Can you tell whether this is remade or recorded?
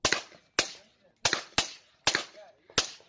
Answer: recorded